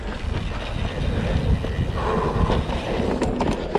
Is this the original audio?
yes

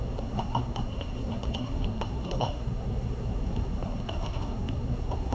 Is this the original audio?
no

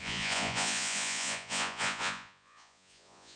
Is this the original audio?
no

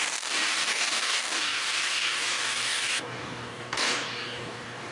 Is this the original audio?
no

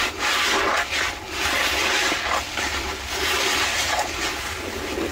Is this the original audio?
yes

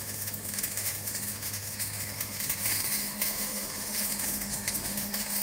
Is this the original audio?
no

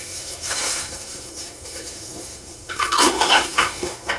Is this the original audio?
no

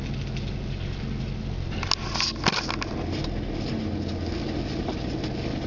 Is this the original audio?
yes